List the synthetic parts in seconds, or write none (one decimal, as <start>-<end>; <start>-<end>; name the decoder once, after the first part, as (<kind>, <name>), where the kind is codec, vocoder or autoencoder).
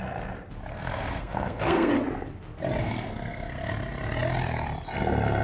0.7-1.9 (codec, SNAC); 2.8-3.7